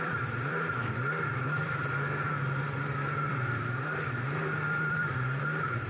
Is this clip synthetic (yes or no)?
yes